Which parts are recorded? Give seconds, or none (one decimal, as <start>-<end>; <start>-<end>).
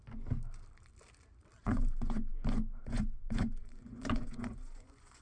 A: 0.0-1.6; 2.3-2.8